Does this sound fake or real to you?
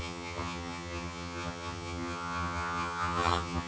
fake